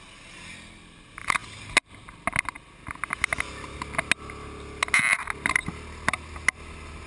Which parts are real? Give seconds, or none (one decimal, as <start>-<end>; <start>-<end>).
0.0-7.1